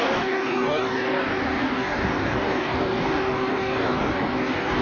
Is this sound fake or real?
fake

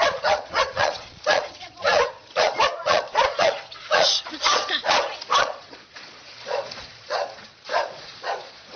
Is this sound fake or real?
fake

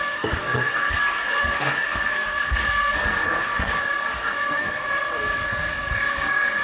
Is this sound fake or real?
fake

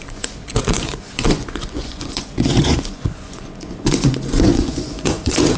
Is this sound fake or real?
fake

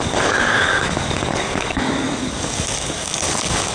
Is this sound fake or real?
fake